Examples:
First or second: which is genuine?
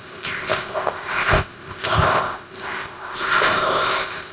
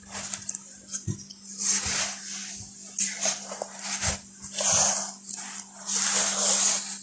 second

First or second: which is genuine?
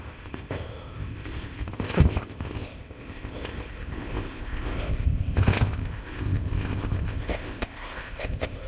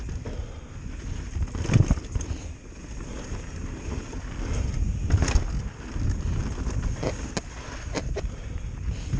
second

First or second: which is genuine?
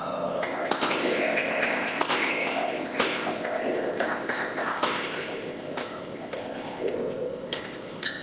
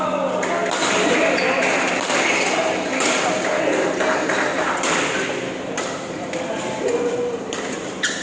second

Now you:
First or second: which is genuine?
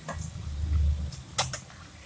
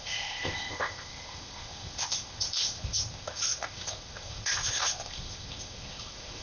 first